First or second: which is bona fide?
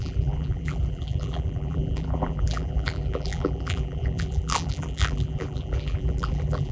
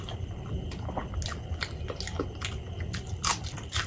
second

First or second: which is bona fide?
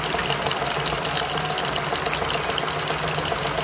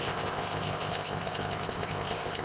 first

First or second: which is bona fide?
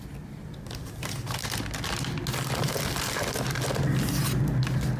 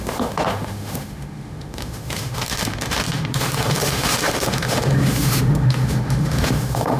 first